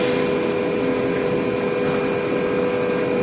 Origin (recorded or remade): recorded